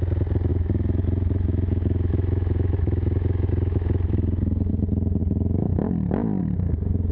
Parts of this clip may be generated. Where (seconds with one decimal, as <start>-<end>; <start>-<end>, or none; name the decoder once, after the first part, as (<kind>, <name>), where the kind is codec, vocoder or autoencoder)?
0.5-4.7 (autoencoder, DAC-VAE); 5.2-6.4